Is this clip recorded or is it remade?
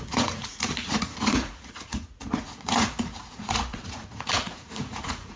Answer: remade